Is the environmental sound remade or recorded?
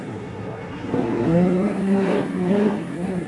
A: remade